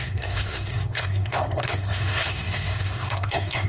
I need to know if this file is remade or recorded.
remade